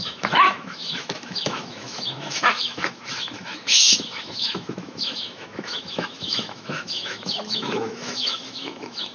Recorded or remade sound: remade